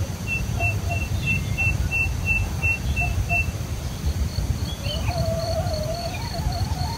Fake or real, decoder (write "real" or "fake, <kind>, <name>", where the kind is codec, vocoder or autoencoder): fake, vocoder, BigVGAN v2